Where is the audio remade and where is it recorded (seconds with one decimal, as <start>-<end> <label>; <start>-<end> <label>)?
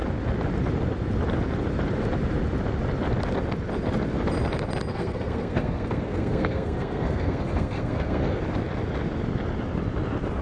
0.0-4.9 recorded; 4.9-8.4 remade; 8.4-10.4 recorded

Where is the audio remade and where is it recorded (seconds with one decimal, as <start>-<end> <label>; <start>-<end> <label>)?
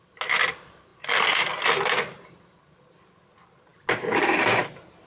0.0-5.1 recorded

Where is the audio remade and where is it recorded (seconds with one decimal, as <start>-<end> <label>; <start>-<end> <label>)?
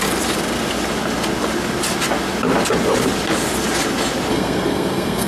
0.0-4.3 recorded; 4.3-5.3 remade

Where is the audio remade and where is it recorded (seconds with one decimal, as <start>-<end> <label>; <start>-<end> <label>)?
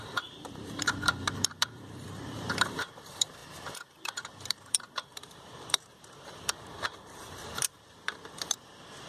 0.0-9.1 remade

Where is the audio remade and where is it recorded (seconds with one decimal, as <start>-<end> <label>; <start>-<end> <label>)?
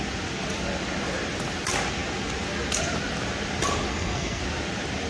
0.0-3.9 recorded; 3.9-4.4 remade; 4.4-5.1 recorded